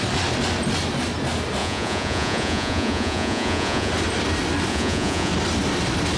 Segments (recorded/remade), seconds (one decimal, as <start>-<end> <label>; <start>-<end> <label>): 0.0-1.6 recorded; 1.6-3.9 remade; 3.9-4.7 recorded; 4.7-5.3 remade; 5.3-6.2 recorded